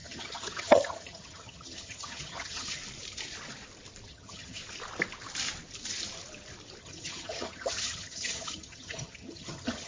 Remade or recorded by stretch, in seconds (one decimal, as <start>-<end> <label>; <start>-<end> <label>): 0.0-2.8 remade; 2.8-4.1 recorded; 4.1-4.6 remade; 4.6-6.8 recorded; 6.8-9.9 remade